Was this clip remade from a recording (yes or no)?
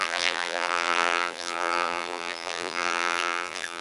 yes